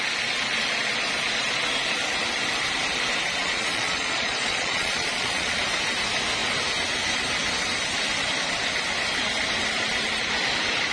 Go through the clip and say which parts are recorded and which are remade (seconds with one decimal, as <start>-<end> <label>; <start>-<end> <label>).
0.0-3.4 recorded; 3.4-5.6 remade; 5.6-10.9 recorded